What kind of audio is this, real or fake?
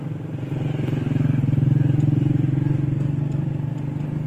real